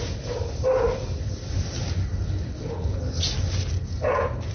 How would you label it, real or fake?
real